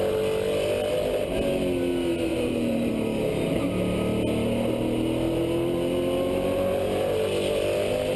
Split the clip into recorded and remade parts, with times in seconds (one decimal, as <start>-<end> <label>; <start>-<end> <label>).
0.0-2.3 recorded; 2.3-2.9 remade; 2.9-8.2 recorded